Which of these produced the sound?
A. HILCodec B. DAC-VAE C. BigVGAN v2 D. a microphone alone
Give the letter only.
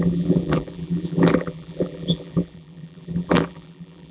C